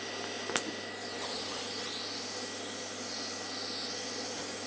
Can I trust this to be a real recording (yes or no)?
yes